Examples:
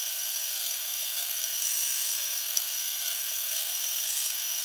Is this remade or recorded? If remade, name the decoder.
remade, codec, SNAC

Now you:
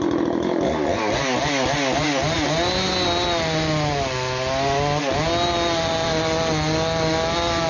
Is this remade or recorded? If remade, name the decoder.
recorded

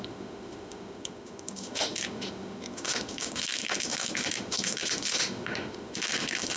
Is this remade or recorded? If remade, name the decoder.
remade, autoencoder, DAC-VAE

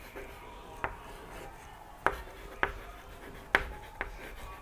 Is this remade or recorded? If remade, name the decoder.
recorded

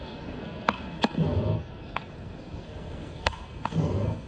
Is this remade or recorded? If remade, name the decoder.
remade, codec, SNAC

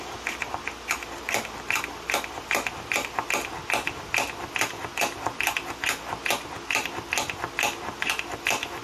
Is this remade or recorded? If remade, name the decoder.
recorded